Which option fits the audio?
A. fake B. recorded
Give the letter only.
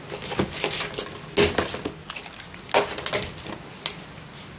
B